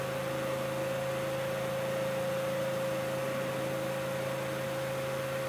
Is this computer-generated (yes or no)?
no